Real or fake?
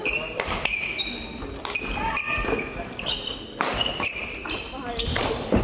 real